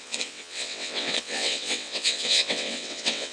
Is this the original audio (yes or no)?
no